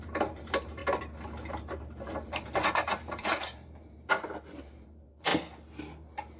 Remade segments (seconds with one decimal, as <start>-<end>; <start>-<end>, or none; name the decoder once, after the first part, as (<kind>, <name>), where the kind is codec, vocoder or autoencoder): 0.0-0.8 (vocoder, BigVGAN v2); 1.5-5.3